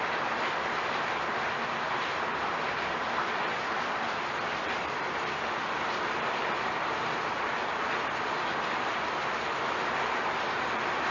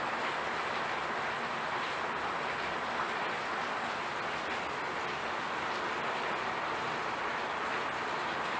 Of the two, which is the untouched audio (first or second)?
second